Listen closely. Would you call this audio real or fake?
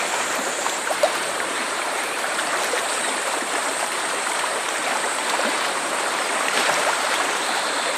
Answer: fake